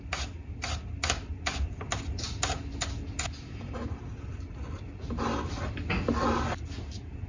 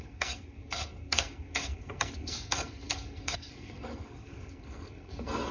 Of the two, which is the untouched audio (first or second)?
first